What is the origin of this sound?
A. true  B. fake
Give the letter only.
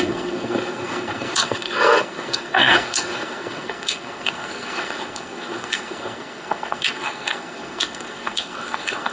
B